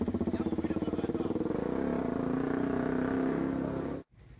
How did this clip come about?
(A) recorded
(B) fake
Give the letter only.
A